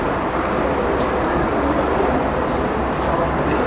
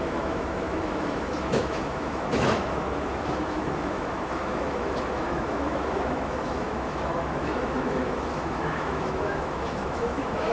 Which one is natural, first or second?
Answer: first